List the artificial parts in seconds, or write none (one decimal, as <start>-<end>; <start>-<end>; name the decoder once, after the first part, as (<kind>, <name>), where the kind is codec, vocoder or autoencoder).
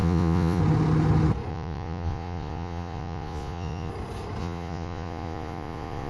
0.0-0.6 (vocoder, Vocos); 1.5-3.9; 4.4-6.1